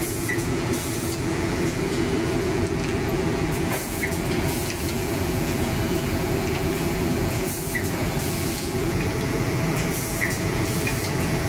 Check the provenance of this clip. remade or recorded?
remade